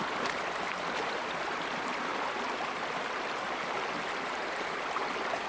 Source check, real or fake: real